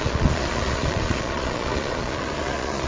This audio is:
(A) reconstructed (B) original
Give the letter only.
A